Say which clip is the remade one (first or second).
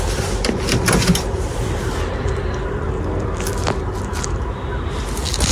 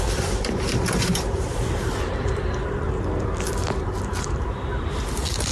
second